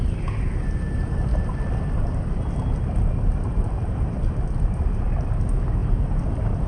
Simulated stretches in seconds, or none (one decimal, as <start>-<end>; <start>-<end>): 1.3-5.3